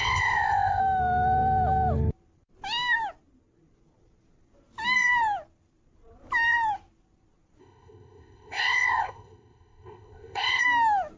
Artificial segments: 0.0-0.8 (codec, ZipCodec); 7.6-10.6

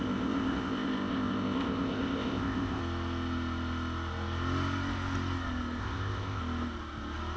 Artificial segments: 0.0-2.8 (codec, ZipCodec); 5.8-6.4

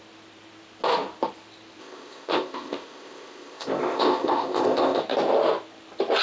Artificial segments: 1.8-5.0 (codec, ZipCodec)

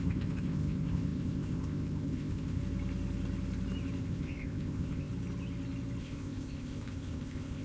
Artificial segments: 0.0-2.6 (codec, ZipCodec); 4.0-5.1; 6.0-7.6

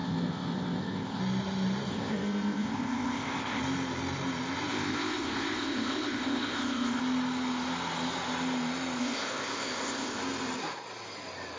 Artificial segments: 0.0-1.2 (codec, ZipCodec); 1.9-3.6; 4.7-7.0; 9.0-10.2

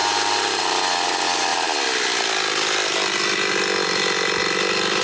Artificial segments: none